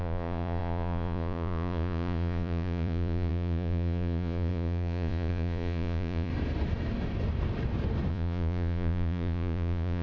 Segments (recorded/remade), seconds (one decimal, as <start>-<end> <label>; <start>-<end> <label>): 0.0-6.3 remade; 6.3-8.1 recorded; 8.1-10.0 remade